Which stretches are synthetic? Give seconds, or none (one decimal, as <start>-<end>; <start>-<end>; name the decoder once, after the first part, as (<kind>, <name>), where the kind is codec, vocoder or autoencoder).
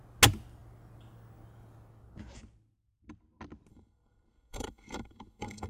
3.7-5.7 (codec, SNAC)